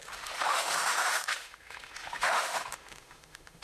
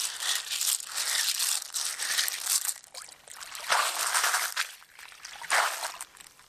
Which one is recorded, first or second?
second